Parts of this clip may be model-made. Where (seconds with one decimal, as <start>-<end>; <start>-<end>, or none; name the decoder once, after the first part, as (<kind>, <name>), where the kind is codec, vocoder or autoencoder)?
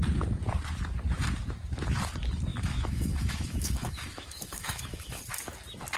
2.5-5.2 (autoencoder, DAC-VAE)